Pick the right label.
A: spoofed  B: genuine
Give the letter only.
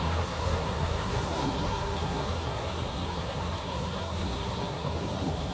A